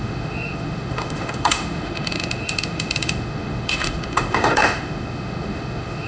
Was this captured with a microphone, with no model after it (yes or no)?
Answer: no